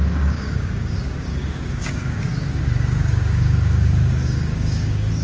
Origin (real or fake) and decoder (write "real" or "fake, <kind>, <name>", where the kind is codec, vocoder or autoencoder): fake, codec, DAC